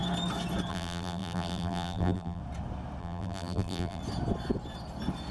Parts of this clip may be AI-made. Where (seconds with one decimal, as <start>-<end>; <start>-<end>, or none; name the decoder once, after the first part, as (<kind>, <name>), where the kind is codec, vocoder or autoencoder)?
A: 0.7-2.4 (vocoder, BigVGAN v2); 3.0-4.0